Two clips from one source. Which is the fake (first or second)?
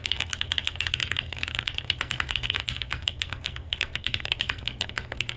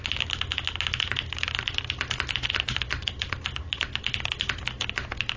first